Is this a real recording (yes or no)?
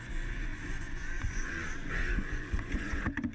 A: no